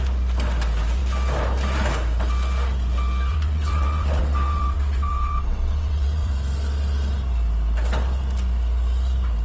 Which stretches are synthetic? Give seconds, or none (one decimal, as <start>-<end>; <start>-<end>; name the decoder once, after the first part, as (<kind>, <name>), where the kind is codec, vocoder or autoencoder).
3.3-6.3 (vocoder, WaveNeXt)